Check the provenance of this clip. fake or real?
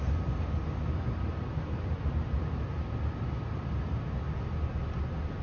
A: real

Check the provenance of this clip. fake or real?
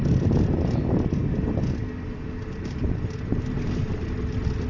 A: real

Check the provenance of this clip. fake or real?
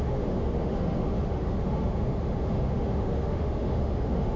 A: fake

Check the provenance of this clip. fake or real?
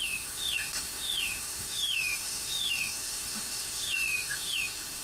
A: fake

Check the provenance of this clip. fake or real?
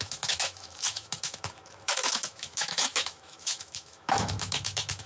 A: fake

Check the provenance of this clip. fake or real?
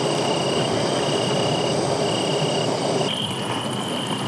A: real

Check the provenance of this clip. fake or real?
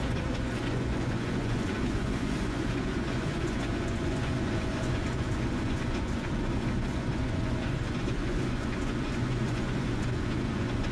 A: fake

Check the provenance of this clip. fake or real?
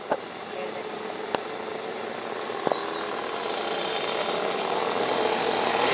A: real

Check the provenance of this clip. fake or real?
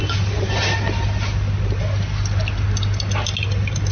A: real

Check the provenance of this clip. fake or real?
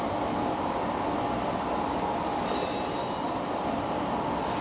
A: fake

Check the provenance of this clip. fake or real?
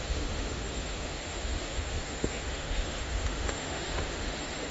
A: fake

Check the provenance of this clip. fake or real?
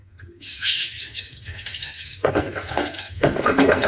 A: fake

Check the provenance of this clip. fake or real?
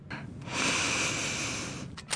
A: real